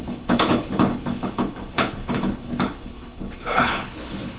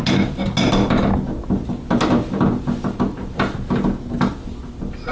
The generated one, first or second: first